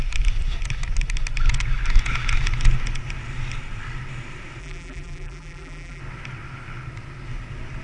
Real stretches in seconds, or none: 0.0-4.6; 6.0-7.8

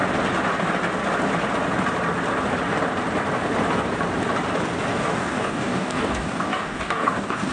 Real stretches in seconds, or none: 0.0-4.9

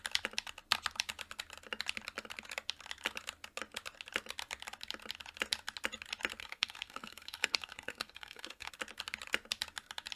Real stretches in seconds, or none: 0.0-6.4; 8.7-10.2